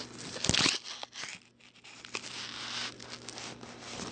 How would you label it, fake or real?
real